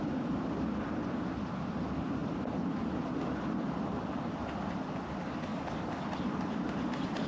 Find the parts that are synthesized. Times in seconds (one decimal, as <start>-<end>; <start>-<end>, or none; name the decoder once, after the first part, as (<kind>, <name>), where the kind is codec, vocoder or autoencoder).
none